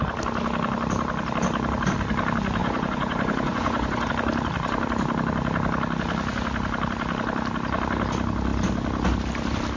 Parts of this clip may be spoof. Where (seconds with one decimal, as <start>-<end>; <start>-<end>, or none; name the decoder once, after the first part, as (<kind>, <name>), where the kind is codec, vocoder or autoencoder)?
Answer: 2.6-4.1 (vocoder, Vocos)